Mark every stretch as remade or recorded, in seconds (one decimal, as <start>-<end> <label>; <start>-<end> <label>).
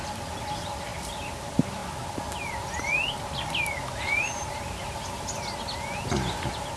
0.0-6.8 recorded